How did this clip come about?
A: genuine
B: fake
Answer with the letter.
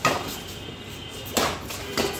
A